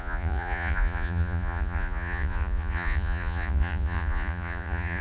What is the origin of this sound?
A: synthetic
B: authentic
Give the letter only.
A